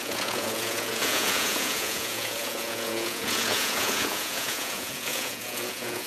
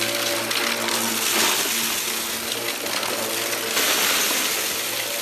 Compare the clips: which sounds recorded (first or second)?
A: second